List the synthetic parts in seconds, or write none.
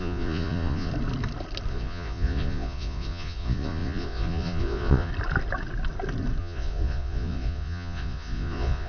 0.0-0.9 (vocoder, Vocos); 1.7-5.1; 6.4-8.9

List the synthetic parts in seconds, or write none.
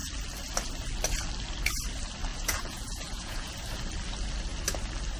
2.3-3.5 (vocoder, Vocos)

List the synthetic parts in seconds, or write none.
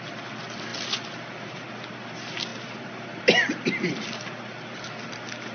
none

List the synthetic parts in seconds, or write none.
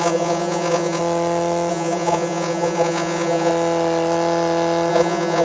0.0-1.0 (vocoder, Vocos); 1.7-3.5; 4.9-5.4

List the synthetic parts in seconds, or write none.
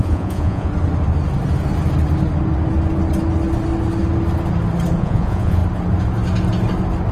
0.0-0.7 (vocoder, Vocos); 5.0-5.6